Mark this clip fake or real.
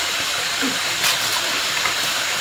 real